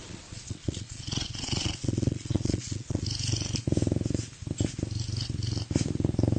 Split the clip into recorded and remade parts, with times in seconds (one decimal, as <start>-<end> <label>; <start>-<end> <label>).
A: 0.0-3.0 remade; 3.0-6.4 recorded